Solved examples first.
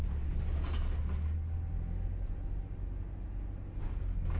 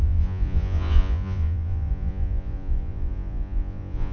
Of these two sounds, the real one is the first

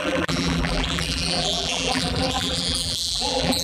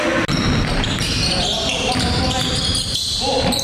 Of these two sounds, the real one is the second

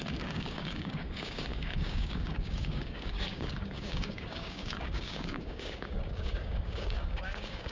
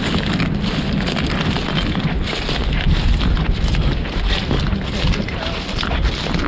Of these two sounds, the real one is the second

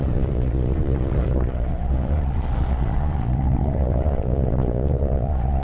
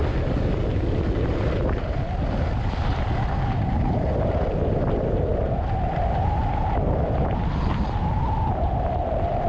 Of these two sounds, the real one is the second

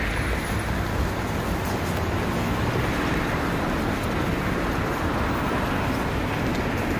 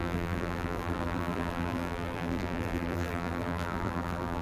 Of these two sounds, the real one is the first